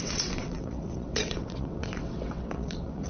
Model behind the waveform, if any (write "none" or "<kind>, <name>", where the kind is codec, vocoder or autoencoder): vocoder, WaveNeXt